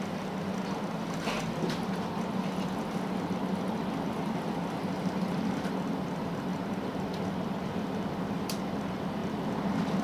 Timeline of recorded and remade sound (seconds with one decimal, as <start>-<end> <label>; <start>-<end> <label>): 0.0-10.0 recorded